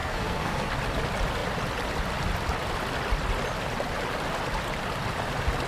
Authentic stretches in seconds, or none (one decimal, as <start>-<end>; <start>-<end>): 0.7-5.7